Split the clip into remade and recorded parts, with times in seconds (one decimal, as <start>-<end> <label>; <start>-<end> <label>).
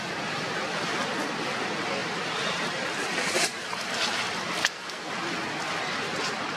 0.0-4.6 recorded; 4.6-5.1 remade; 5.1-6.6 recorded